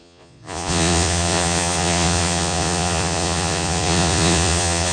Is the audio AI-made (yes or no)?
yes